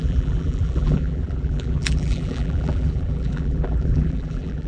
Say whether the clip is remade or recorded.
remade